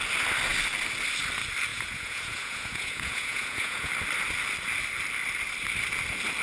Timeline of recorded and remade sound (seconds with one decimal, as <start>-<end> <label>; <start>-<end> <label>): 0.0-1.7 recorded; 1.7-3.9 remade; 3.9-6.4 recorded